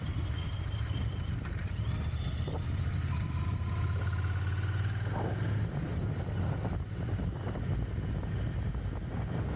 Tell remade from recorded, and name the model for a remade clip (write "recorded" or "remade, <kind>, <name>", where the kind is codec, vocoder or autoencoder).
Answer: recorded